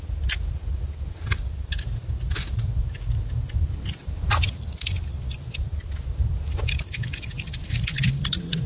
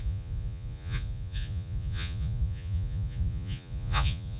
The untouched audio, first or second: first